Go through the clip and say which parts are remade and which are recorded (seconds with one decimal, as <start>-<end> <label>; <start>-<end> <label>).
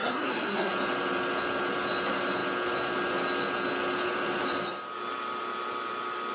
0.0-0.7 remade; 0.7-6.3 recorded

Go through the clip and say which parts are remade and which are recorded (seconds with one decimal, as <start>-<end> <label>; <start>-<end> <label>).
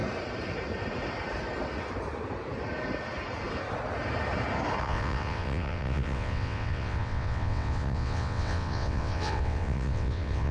0.0-4.8 recorded; 4.8-10.5 remade